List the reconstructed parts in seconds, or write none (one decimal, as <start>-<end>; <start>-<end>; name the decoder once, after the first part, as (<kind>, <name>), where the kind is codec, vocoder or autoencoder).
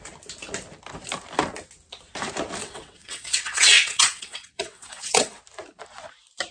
2.6-5.4 (vocoder, WaveNeXt)